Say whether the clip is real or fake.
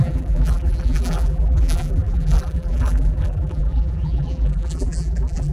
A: fake